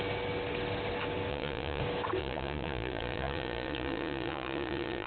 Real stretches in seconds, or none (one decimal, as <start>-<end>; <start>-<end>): 0.0-1.3; 1.8-2.2